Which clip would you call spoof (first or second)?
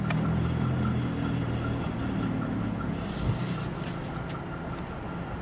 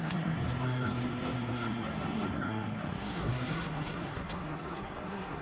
second